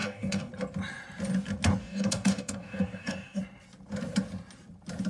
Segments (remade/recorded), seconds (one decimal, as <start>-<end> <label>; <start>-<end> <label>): 0.0-0.5 remade; 0.5-1.8 recorded; 1.8-3.4 remade; 3.4-5.1 recorded